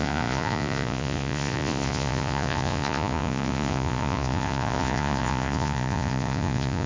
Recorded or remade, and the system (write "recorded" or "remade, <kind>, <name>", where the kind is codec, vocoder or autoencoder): remade, vocoder, Vocos